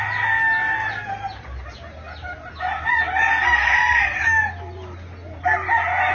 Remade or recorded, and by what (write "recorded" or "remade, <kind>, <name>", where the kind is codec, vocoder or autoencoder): recorded